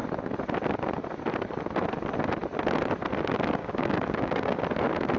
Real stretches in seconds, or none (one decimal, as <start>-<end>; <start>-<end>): 0.0-3.6; 4.6-5.2